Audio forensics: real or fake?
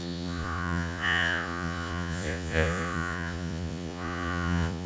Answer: fake